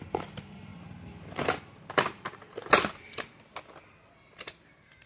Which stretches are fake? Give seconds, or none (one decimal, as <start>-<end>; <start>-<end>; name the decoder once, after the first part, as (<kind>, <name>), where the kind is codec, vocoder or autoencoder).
none